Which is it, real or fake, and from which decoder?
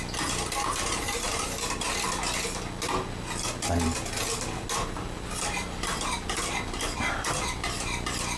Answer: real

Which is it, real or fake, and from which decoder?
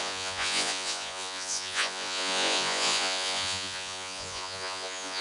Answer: fake, vocoder, Vocos